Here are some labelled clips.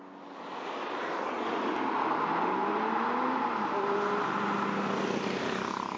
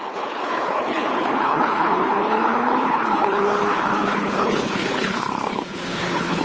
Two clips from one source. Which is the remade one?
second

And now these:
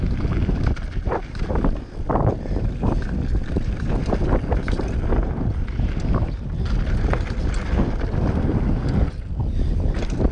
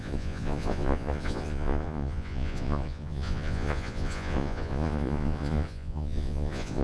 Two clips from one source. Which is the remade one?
second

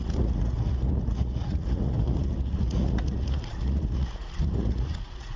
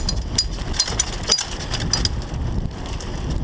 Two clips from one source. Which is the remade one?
first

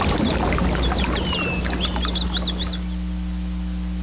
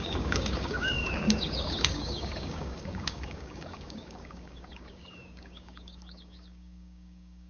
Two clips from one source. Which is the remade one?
second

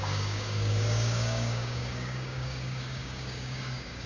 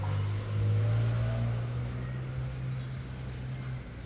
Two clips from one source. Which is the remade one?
first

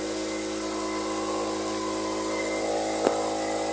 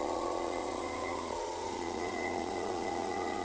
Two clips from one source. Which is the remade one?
second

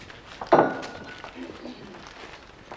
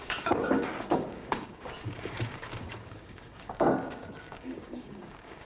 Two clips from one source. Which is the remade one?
second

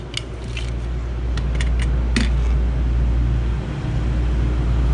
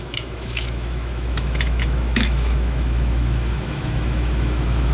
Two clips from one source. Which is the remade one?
second